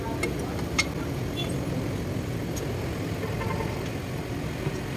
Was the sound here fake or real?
real